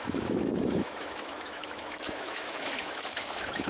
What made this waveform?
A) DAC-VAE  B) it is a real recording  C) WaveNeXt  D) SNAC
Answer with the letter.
A